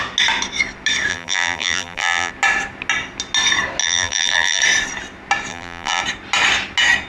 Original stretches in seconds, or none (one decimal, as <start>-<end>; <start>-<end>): 0.0-1.1; 2.3-3.8; 4.6-5.5; 6.0-7.1

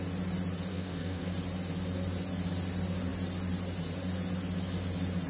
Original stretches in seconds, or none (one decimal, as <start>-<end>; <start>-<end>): 0.0-0.7; 1.3-5.3

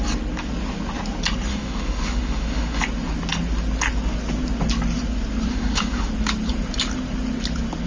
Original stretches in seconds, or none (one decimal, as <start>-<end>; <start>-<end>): 0.0-1.5; 2.8-5.5; 6.1-7.9

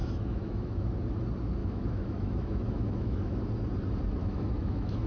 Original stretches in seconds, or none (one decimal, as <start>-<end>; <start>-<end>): 0.9-1.6; 3.4-4.2

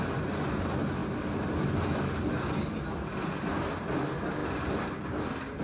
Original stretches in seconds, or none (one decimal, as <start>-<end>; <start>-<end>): 0.0-5.6

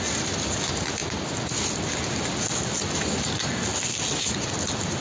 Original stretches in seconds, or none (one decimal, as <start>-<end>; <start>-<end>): 0.0-5.0